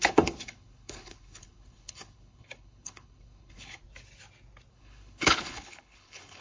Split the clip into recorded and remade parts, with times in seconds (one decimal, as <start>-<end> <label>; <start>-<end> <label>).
0.0-3.8 remade; 3.8-4.7 recorded; 4.7-6.4 remade